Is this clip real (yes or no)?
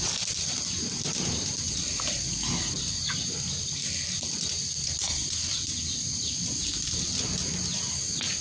yes